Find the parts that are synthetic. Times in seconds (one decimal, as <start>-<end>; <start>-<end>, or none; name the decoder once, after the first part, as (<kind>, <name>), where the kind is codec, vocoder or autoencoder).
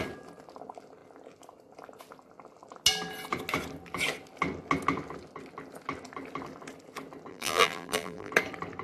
7.3-8.3 (vocoder, BigVGAN v2)